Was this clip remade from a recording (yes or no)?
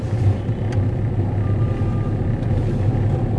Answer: no